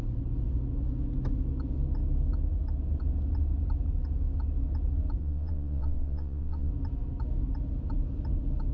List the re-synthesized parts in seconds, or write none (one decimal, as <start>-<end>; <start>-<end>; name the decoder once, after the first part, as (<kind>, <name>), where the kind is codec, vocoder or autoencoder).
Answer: 5.2-6.7 (vocoder, WaveNeXt)